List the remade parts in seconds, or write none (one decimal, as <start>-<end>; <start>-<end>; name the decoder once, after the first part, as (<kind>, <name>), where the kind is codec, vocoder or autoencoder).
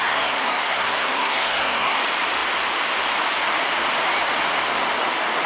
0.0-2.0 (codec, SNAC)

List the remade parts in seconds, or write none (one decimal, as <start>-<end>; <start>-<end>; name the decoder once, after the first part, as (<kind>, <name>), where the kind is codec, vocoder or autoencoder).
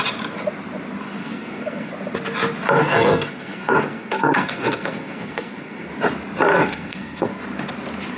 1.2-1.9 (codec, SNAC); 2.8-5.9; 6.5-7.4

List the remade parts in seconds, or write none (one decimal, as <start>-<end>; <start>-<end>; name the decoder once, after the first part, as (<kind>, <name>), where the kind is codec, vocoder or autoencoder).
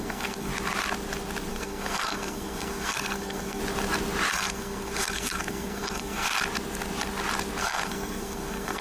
0.0-0.5 (codec, SNAC); 1.5-3.6; 4.3-6.3; 7.6-8.8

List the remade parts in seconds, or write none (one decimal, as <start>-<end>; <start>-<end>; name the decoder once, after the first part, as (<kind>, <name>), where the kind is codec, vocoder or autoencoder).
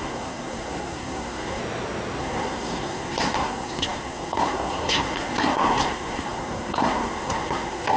0.0-1.6 (codec, SNAC); 2.2-8.0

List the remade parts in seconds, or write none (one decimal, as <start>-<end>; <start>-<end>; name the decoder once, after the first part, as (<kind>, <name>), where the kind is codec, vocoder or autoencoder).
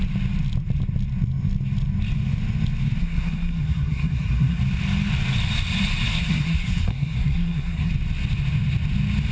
3.0-4.6 (codec, SNAC); 6.1-7.9